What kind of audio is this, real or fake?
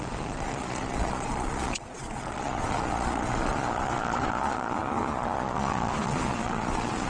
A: fake